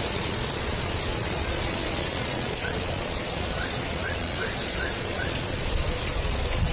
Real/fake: fake